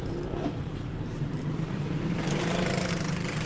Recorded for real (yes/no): no